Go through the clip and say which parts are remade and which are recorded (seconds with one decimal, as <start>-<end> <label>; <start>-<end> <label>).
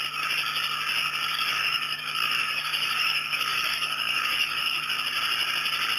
0.0-1.3 recorded; 1.3-4.9 remade; 4.9-6.0 recorded